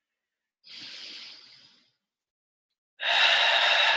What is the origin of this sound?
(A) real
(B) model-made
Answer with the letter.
A